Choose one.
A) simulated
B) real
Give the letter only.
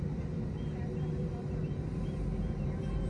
B